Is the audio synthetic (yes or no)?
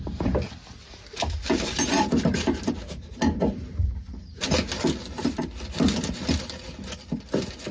no